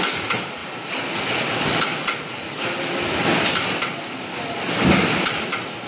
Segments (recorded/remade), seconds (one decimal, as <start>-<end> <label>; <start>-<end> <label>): 0.0-5.9 recorded